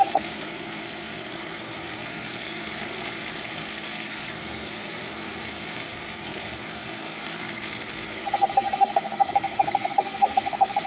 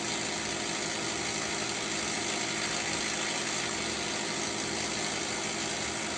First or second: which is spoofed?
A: first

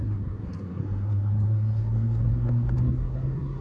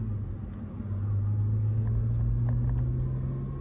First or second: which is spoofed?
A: first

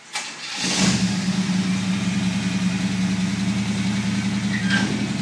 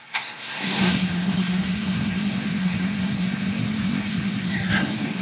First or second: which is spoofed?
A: second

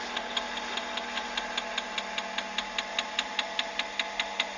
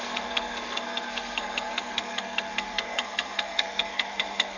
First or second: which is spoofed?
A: second